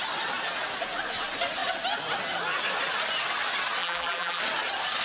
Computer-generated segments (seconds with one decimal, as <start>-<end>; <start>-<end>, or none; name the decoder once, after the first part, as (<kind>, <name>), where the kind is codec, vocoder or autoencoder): 3.8-4.4 (vocoder, BigVGAN v2)